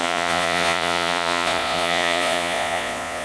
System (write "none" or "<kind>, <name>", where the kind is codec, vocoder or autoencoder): vocoder, Vocos